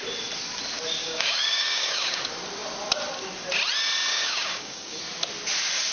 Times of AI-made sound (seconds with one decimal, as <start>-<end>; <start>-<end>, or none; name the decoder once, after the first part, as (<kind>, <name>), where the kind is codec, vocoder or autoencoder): 1.0-2.2 (codec, DAC); 4.1-5.0